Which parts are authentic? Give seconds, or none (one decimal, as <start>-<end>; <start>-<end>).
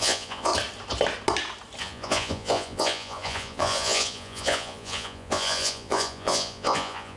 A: 0.5-1.8